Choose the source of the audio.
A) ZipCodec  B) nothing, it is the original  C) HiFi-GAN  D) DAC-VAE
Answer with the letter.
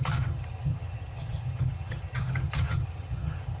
C